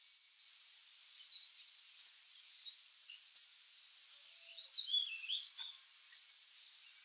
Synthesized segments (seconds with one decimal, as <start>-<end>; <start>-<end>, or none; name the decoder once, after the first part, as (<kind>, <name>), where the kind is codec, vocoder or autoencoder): none